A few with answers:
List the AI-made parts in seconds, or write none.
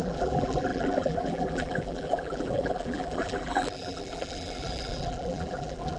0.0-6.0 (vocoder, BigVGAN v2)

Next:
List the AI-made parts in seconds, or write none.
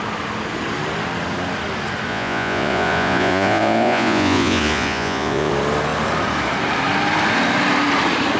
2.1-5.5 (vocoder, Vocos)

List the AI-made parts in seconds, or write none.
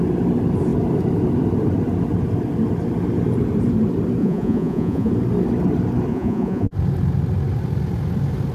4.2-5.1 (vocoder, Vocos); 6.1-6.7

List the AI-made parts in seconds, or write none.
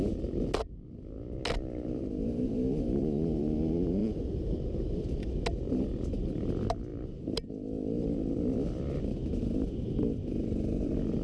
none